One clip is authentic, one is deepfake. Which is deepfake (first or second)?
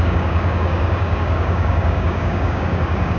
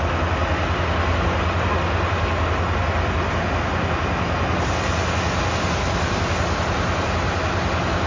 first